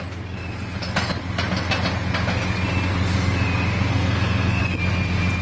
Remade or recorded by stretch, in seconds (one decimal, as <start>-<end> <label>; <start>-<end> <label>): 0.0-3.9 recorded; 3.9-4.6 remade; 4.6-5.4 recorded